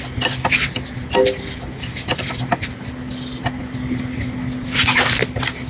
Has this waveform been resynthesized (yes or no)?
no